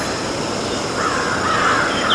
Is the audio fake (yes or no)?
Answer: no